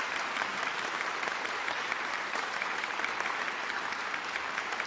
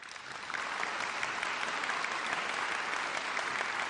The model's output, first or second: first